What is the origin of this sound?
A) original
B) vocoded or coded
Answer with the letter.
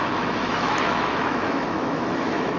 B